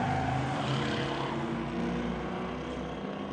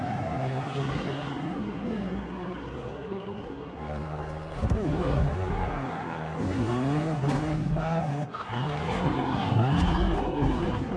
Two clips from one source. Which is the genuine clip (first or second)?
first